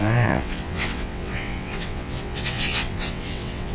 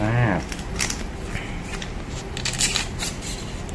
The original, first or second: second